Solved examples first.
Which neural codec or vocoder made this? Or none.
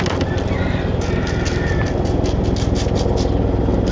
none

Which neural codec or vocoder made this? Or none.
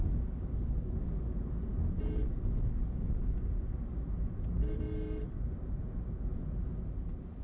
none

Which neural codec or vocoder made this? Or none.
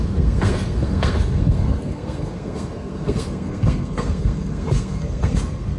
codec, SNAC